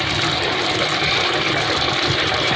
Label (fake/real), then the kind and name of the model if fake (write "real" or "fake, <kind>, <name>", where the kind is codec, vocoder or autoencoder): real